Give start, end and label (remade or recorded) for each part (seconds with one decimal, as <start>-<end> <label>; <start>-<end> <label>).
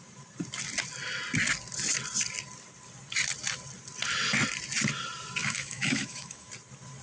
0.0-5.4 recorded; 5.4-6.5 remade; 6.5-7.0 recorded